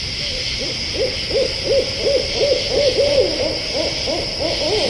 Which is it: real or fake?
real